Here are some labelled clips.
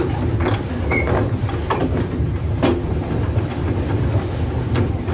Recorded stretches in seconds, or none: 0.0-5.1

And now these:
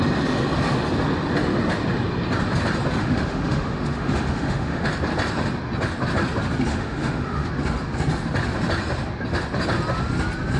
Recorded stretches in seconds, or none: 0.0-3.0; 4.9-6.7; 7.5-10.6